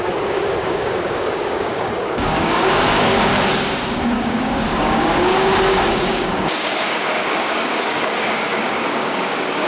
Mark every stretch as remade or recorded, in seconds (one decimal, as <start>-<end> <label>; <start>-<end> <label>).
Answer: 0.0-3.3 remade; 3.3-4.0 recorded; 4.0-9.7 remade